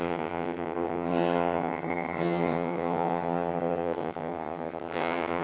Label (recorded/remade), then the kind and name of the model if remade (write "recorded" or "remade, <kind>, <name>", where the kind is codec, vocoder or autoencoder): remade, vocoder, HiFi-GAN